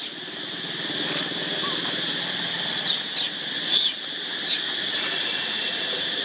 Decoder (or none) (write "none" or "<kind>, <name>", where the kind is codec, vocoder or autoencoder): none